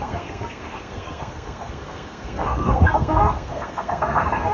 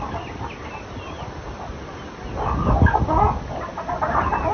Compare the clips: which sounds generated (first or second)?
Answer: first